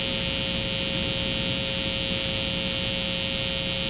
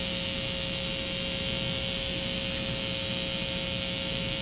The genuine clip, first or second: first